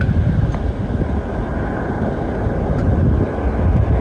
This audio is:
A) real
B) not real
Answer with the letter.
A